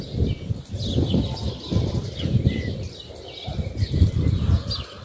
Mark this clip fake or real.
real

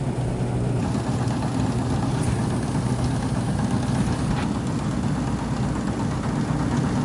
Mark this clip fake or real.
real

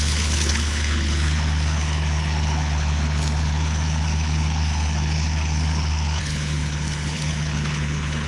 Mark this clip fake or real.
fake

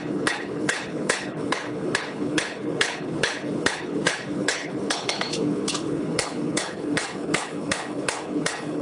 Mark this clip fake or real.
fake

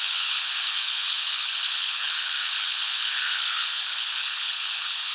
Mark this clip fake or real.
fake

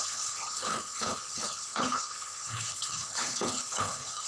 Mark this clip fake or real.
fake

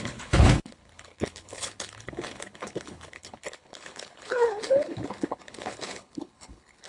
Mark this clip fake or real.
fake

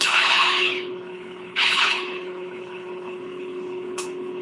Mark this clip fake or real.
fake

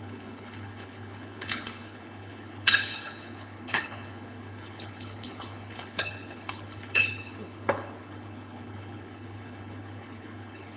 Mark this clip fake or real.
fake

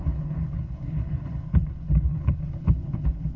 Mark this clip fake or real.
fake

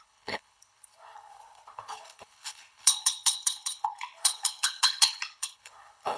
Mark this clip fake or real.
fake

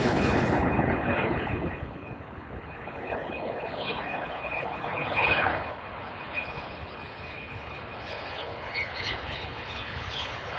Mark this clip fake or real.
fake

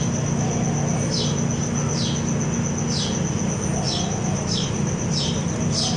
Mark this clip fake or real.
real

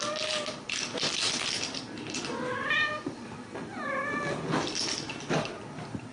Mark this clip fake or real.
real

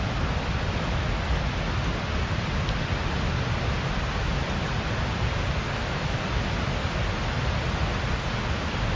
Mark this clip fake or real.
real